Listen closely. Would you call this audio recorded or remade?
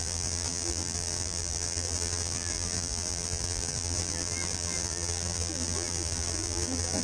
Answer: remade